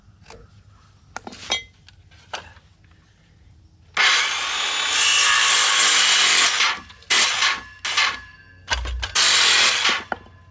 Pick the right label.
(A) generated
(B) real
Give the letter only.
B